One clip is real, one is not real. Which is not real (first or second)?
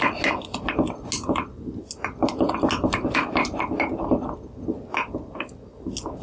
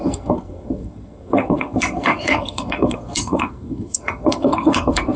second